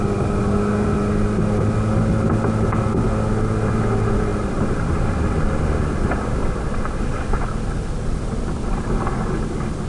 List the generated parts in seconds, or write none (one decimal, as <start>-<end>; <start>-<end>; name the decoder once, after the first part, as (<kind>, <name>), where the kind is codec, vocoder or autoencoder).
4.3-5.4 (vocoder, BigVGAN v2); 6.4-7.0

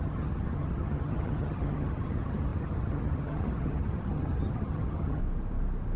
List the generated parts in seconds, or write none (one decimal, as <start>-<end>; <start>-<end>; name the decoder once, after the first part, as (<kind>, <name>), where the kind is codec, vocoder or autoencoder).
0.0-5.2 (vocoder, HiFi-GAN)

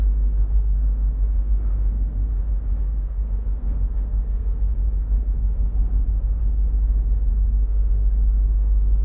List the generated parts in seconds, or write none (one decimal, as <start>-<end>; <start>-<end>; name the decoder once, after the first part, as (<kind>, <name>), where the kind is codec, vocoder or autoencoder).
0.0-2.3 (codec, SNAC); 2.8-6.4; 7.3-9.0

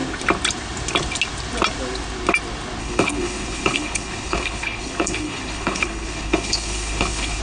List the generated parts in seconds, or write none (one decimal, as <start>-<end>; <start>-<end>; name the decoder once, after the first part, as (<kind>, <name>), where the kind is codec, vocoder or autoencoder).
2.8-7.4 (codec, HILCodec)

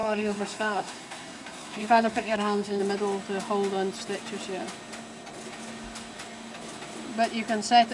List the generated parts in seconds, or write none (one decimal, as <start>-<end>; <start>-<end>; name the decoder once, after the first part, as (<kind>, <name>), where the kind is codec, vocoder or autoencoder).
0.0-2.8 (codec, SNAC)

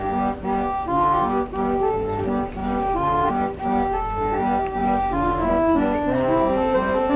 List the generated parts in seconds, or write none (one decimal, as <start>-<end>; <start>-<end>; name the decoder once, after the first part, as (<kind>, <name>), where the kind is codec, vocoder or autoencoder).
2.6-3.3 (autoencoder, DAC-VAE); 4.8-5.5